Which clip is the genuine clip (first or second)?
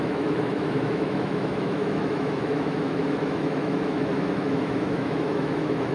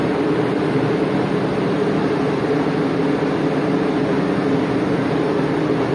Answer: second